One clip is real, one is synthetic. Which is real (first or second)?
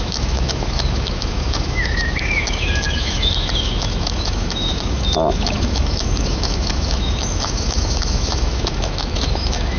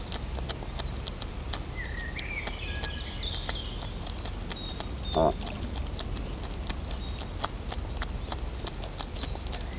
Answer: second